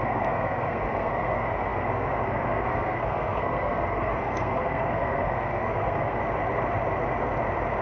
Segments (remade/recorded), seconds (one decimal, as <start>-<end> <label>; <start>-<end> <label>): 0.0-6.2 remade; 6.2-7.8 recorded